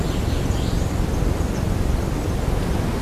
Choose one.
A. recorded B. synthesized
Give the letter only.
A